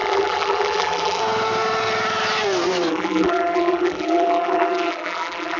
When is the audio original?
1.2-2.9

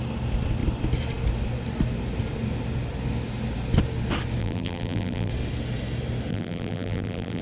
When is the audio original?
0.0-4.4; 5.3-6.3

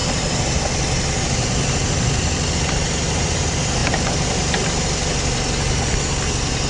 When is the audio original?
0.6-3.8; 4.4-6.7

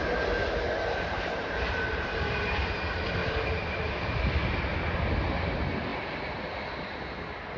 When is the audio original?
0.0-1.1; 2.8-3.2; 4.3-7.6

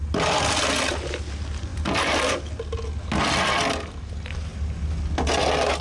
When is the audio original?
0.0-5.8

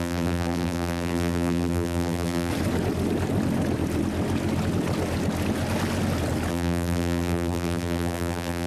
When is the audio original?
2.5-6.5